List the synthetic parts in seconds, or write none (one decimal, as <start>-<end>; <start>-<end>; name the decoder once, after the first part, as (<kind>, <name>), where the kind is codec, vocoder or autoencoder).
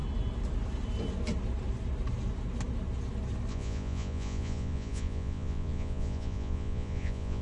3.5-7.4 (vocoder, Vocos)